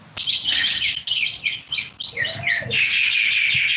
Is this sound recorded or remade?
recorded